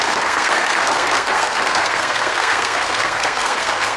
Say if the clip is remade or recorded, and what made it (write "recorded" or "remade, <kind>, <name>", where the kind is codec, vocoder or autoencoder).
remade, codec, SNAC